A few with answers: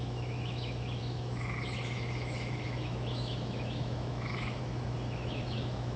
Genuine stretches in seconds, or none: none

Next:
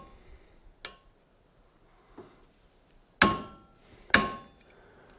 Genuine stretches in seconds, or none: 0.0-5.2

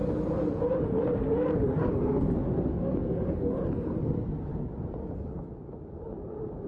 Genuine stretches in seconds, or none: 2.0-6.7